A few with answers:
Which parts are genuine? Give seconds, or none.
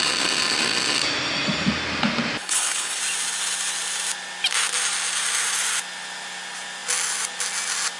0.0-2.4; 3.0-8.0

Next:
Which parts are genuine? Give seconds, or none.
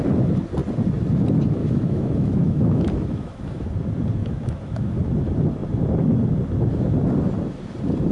0.0-1.6; 3.7-4.2; 5.0-8.1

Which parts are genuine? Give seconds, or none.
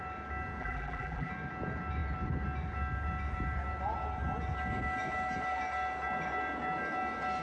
0.0-0.6; 1.3-7.4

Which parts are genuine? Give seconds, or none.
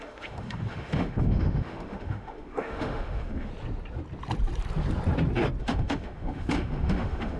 3.5-5.6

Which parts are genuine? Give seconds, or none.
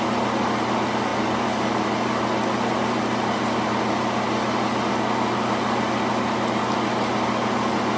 0.0-8.0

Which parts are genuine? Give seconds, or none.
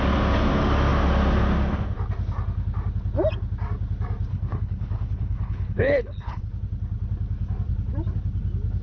0.0-4.3; 6.4-8.8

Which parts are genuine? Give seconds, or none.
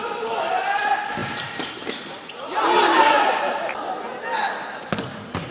4.1-5.5